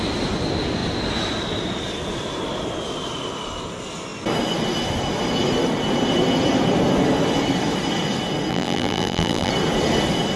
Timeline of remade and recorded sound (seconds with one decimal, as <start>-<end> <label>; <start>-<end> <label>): 0.0-8.5 recorded; 8.5-9.5 remade; 9.5-10.4 recorded